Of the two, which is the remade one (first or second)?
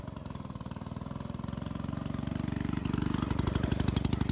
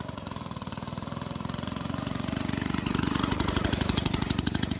second